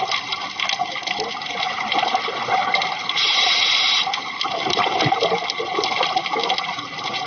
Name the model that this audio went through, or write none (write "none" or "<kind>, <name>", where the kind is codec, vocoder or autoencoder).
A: none